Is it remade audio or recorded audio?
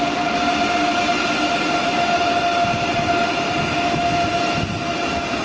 recorded